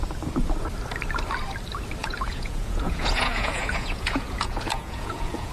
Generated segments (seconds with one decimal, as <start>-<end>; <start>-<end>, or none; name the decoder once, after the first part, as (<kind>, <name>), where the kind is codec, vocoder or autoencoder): 2.0-5.5 (vocoder, Vocos)